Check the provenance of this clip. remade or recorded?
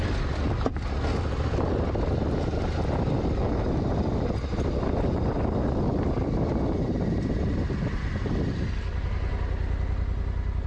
recorded